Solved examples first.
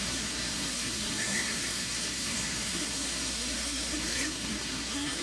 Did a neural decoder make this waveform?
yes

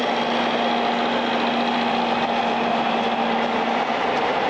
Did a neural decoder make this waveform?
no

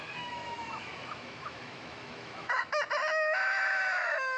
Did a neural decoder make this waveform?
yes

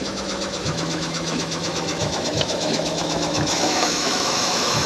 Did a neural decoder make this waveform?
yes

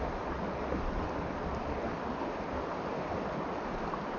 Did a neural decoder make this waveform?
no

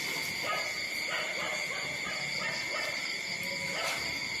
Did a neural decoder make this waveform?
no